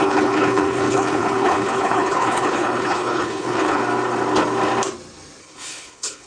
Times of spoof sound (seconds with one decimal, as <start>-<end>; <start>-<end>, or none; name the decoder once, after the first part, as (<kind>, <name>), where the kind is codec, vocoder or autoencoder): 0.0-3.8 (codec, HILCodec); 5.4-6.3